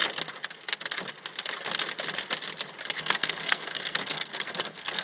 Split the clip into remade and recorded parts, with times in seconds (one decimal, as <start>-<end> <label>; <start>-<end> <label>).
0.0-3.0 recorded; 3.0-5.0 remade